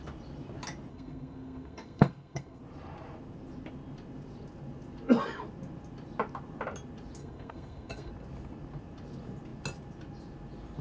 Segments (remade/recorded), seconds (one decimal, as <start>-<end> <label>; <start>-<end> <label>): 0.0-0.9 recorded; 0.9-2.6 remade; 2.6-7.2 recorded; 7.2-8.1 remade; 8.1-10.8 recorded